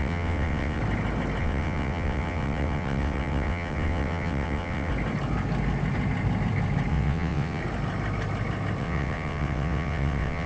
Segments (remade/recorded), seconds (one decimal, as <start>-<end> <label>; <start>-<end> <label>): 0.0-0.8 remade; 0.8-1.4 recorded; 1.4-4.9 remade; 4.9-6.9 recorded; 6.9-7.6 remade; 7.6-8.8 recorded; 8.8-10.5 remade